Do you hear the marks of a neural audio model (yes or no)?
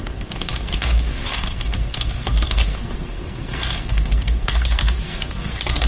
yes